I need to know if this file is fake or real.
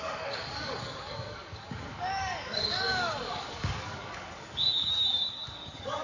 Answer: fake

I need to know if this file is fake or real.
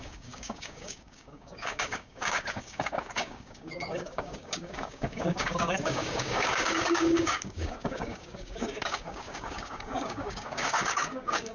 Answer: fake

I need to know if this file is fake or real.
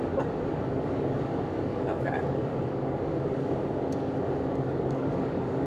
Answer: fake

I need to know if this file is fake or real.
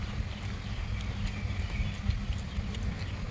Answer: real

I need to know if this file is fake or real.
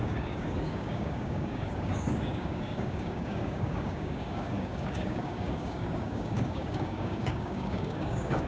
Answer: fake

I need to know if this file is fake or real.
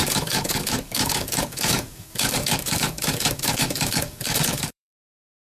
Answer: fake